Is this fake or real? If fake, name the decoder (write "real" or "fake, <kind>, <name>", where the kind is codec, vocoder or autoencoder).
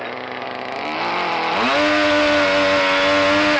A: real